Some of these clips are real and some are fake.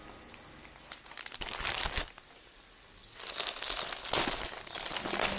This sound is real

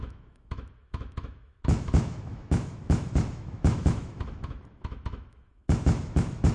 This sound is fake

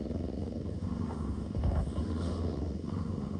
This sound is fake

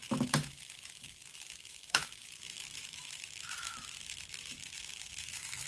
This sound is fake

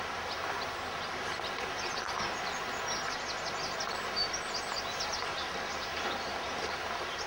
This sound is real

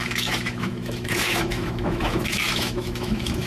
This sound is fake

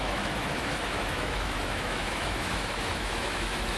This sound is fake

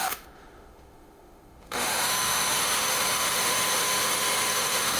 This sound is fake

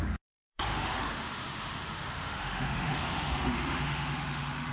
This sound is fake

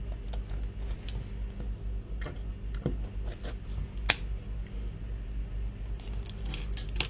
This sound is real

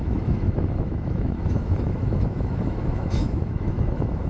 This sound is fake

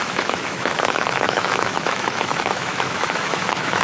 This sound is fake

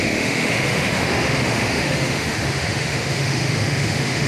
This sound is fake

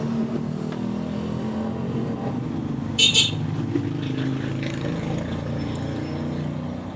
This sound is real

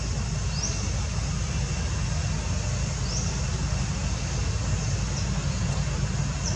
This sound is real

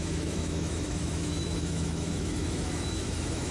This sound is fake